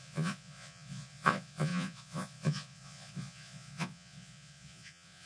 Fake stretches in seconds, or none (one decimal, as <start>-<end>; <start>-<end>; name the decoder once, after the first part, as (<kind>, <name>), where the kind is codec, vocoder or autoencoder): 0.0-5.3 (vocoder, Vocos)